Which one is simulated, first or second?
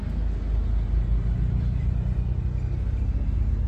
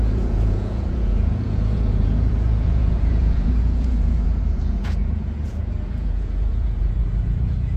second